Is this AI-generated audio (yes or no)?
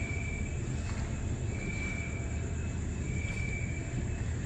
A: no